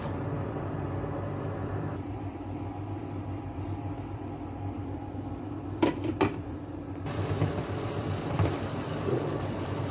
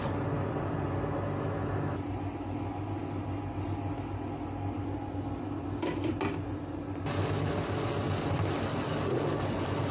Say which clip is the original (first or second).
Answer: second